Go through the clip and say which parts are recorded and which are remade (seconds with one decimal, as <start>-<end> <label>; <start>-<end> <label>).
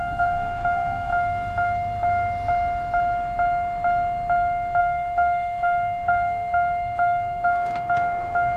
0.0-1.1 remade; 1.1-4.8 recorded; 4.8-8.6 remade